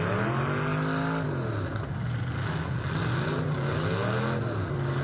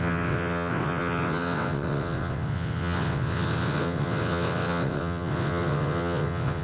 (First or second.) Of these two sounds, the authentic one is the first